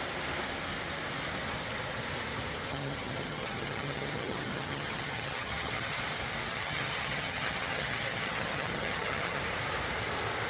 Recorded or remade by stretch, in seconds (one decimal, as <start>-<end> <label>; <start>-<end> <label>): 0.0-2.7 recorded; 2.7-6.0 remade; 6.0-6.5 recorded; 6.5-9.4 remade; 9.4-10.5 recorded